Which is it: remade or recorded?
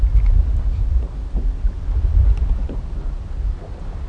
recorded